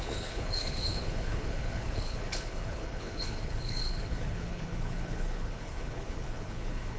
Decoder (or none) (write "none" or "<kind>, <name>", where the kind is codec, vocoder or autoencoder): codec, HILCodec